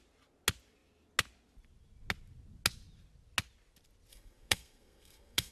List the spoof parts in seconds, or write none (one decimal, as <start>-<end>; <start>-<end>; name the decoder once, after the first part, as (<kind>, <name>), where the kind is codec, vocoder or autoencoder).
4.1-5.5 (codec, SNAC)